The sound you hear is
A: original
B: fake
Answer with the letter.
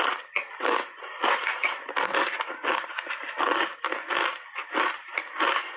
A